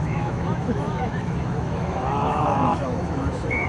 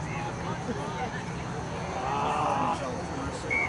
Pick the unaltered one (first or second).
second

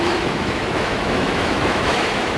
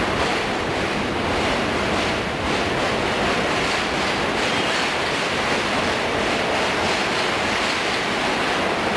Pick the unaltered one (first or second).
second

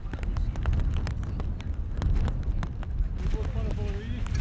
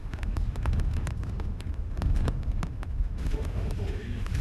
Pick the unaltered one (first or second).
first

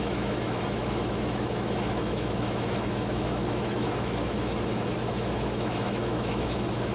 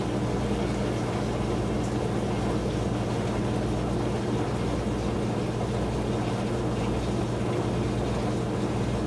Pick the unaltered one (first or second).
second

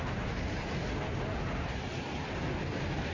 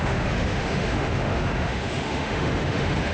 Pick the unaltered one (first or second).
first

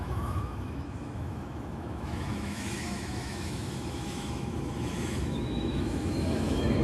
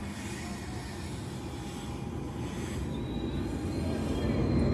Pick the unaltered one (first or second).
second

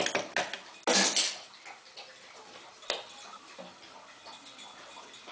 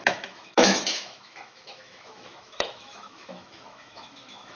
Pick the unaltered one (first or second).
first